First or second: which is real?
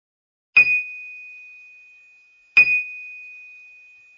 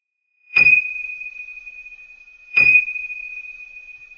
first